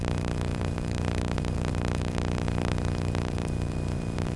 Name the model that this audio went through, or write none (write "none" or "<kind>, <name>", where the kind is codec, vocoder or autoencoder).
vocoder, BigVGAN v2